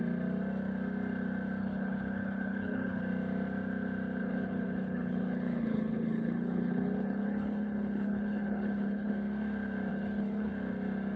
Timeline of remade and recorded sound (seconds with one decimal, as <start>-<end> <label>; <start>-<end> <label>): 0.0-1.6 recorded; 1.6-3.0 remade; 3.0-4.2 recorded; 4.2-9.1 remade; 9.1-9.9 recorded; 9.9-10.5 remade; 10.5-11.2 recorded